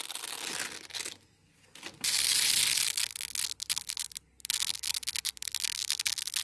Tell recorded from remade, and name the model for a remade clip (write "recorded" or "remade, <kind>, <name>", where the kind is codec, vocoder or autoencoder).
recorded